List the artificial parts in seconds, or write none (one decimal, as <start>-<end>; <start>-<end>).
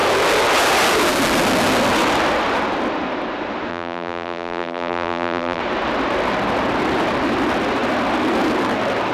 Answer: 3.7-5.6